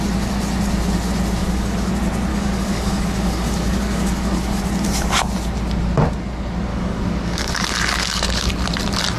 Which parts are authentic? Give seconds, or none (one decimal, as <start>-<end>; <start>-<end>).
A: 0.0-1.4; 1.9-2.3; 4.6-6.7; 8.5-9.2